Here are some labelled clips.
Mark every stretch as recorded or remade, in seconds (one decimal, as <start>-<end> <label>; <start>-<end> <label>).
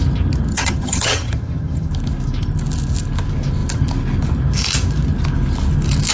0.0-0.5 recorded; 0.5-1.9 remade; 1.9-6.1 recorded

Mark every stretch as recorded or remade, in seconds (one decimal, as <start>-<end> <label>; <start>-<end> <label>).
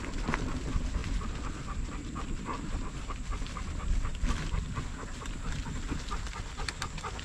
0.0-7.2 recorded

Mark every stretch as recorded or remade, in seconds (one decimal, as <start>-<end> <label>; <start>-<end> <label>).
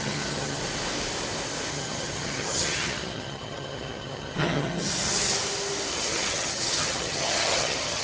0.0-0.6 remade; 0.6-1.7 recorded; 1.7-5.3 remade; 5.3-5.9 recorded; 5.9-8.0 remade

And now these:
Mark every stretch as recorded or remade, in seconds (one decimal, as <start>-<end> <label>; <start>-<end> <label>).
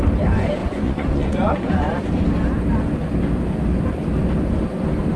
0.0-0.6 recorded; 0.6-2.0 remade; 2.0-5.2 recorded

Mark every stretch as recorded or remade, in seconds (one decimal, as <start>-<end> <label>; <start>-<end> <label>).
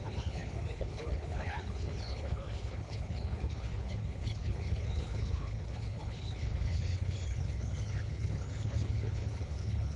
0.0-10.0 remade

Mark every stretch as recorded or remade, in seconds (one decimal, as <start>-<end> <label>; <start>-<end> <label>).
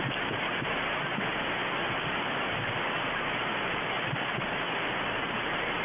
0.0-5.8 recorded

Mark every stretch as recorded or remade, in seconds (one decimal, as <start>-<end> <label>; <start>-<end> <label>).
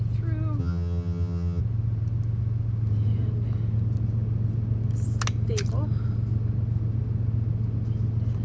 0.0-0.6 recorded; 0.6-1.6 remade; 1.6-8.4 recorded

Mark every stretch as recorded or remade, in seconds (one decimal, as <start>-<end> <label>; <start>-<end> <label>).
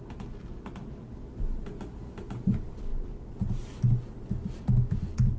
0.0-2.9 recorded; 2.9-3.7 remade; 3.7-5.4 recorded